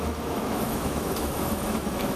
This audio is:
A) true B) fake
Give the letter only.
B